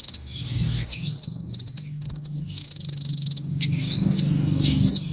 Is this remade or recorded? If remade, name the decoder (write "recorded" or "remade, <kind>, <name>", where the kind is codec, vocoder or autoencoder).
remade, codec, DAC